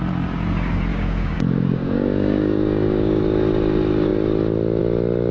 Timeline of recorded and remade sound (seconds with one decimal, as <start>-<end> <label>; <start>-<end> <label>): 0.0-0.9 recorded; 0.9-3.2 remade; 3.2-5.3 recorded